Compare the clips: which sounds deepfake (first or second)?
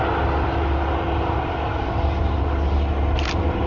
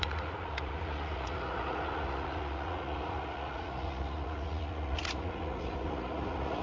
second